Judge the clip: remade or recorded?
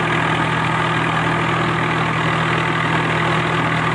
recorded